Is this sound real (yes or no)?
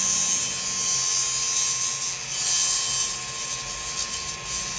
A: yes